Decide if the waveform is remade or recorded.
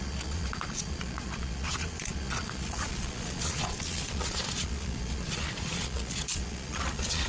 remade